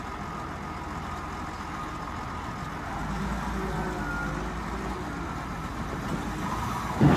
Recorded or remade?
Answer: recorded